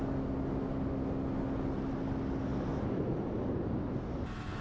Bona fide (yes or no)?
yes